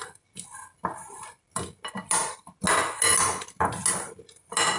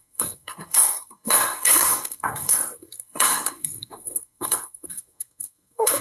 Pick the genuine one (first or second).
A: first